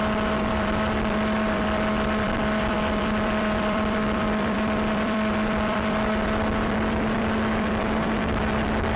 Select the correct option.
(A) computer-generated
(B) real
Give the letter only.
A